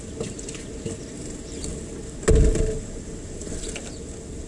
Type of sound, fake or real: real